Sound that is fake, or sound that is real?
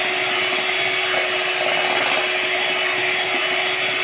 real